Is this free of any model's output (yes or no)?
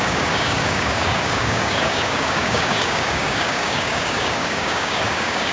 no